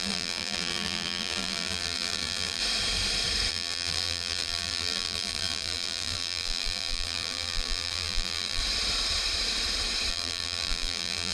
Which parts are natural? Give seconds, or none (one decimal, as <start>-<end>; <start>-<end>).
2.6-3.5; 8.6-10.1